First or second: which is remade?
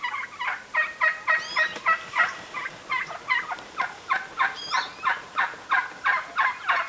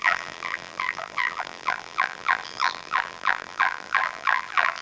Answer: second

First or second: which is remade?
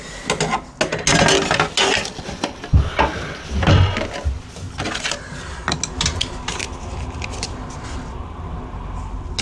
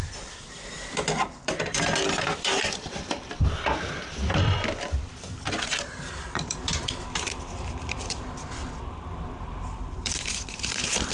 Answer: second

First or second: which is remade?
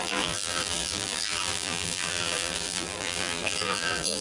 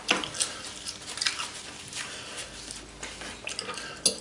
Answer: first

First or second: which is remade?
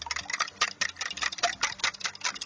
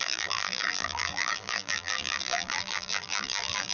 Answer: second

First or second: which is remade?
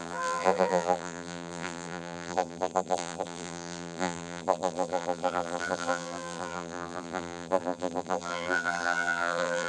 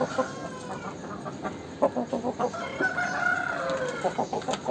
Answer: first